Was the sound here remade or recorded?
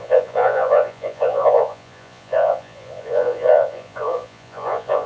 remade